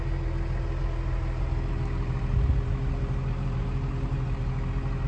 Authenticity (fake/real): real